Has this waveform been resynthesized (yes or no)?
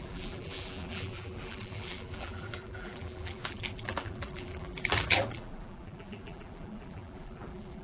yes